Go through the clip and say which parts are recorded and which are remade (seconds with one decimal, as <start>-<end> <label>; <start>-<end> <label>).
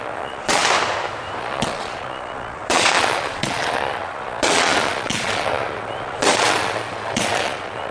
0.0-0.6 remade; 0.6-1.4 recorded; 1.4-7.9 remade